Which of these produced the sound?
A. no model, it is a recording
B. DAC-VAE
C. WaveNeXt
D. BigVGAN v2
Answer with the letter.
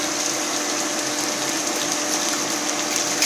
A